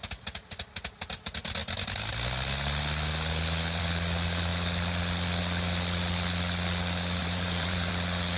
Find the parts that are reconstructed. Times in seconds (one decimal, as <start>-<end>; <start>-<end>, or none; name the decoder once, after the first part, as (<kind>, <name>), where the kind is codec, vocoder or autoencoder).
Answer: 7.2-7.9 (vocoder, BigVGAN v2)